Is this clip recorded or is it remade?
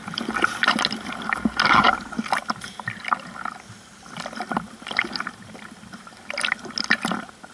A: recorded